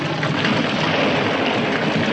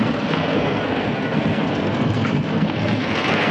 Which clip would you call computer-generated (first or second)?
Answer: second